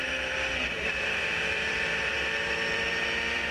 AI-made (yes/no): yes